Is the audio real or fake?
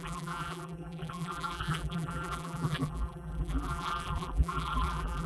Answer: fake